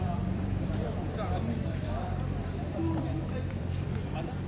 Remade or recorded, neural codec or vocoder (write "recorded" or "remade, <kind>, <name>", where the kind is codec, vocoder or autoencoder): remade, vocoder, BigVGAN v2